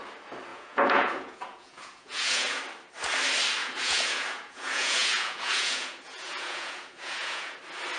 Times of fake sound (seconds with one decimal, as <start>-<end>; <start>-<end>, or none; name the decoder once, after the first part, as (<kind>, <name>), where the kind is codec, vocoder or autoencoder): 0.5-2.6 (vocoder, Vocos); 3.6-7.6